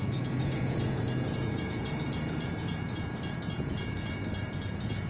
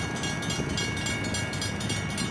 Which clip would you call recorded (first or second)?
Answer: second